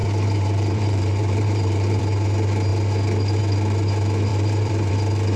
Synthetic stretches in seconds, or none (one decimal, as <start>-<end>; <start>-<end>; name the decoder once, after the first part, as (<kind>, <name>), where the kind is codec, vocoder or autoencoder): 0.0-2.0 (vocoder, BigVGAN v2); 4.3-4.9